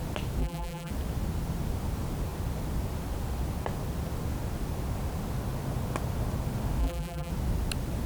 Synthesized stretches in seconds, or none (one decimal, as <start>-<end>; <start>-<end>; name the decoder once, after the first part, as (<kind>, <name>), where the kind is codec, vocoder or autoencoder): 0.4-0.9 (vocoder, BigVGAN v2); 6.8-7.3